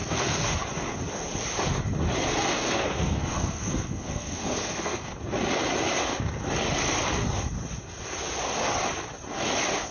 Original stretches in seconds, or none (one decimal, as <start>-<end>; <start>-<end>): 0.5-2.5; 5.1-9.9